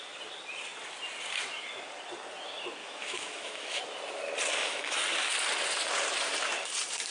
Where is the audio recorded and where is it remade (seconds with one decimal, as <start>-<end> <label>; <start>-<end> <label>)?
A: 0.0-2.8 recorded; 2.8-3.8 remade; 3.8-4.5 recorded; 4.5-5.0 remade; 5.0-7.1 recorded